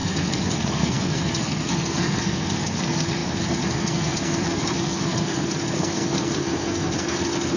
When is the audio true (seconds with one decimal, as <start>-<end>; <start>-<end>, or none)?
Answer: none